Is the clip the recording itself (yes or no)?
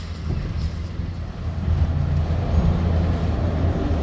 yes